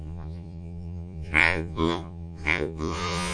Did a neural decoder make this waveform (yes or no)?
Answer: yes